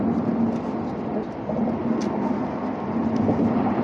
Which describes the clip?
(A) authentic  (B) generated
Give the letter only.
A